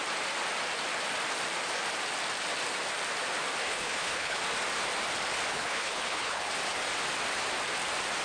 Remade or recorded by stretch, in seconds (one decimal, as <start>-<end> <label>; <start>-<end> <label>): 0.0-3.7 recorded; 3.7-4.4 remade; 4.4-5.5 recorded; 5.5-6.5 remade; 6.5-8.2 recorded